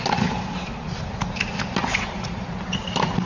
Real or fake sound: real